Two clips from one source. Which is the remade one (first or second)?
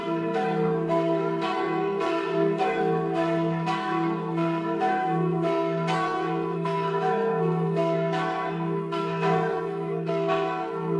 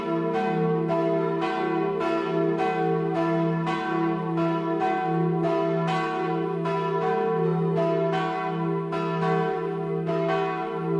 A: first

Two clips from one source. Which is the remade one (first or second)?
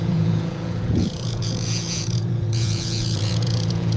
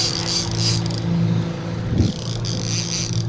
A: first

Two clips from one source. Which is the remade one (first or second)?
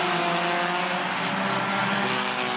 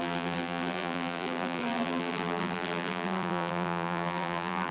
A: second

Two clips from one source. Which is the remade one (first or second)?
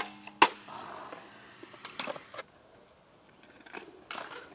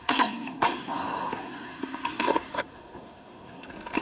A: second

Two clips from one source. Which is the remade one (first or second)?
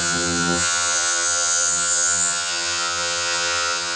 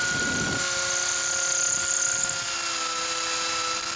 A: first